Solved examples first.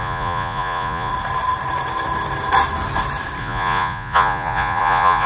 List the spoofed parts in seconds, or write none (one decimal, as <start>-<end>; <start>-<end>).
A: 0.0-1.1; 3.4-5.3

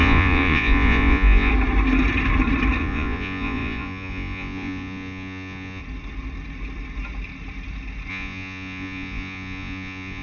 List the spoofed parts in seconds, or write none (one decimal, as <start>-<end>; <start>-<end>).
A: 0.0-1.5; 2.8-5.8; 8.1-10.2

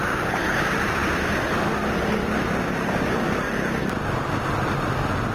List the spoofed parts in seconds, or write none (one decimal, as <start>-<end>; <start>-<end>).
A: none

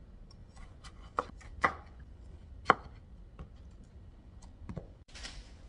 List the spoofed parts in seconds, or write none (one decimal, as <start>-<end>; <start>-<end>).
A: 0.4-2.5; 4.1-5.7